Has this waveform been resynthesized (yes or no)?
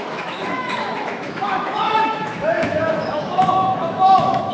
yes